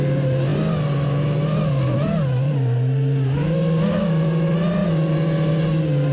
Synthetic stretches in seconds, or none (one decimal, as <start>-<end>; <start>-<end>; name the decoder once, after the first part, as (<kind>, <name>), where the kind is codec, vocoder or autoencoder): none